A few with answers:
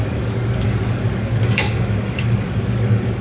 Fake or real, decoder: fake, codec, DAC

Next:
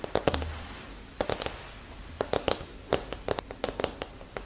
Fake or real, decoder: real